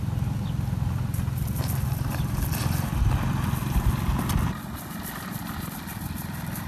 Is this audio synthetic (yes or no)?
no